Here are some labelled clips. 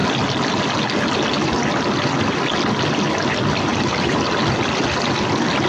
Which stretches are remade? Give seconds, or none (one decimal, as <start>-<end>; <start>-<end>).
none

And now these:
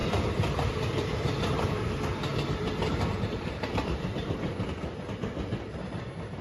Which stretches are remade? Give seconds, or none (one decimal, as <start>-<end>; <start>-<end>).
0.0-1.9; 2.3-4.5

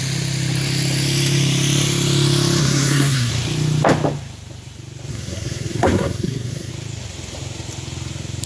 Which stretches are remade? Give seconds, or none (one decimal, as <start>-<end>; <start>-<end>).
2.6-3.3; 5.1-6.7

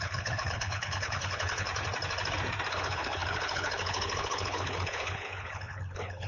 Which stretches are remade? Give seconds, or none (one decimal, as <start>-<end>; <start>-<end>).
0.0-1.7; 2.7-6.3

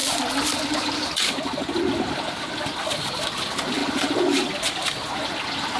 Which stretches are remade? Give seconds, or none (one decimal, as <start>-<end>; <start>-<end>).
none

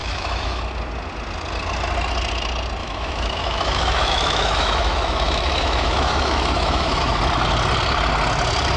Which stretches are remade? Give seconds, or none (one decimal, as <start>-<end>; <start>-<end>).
0.0-0.6; 2.8-7.2

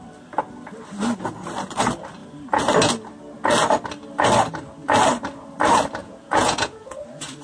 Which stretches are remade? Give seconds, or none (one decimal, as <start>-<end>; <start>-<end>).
6.0-7.0